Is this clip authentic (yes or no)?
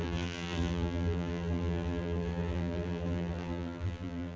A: no